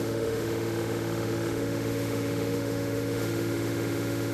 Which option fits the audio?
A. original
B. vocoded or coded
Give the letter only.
B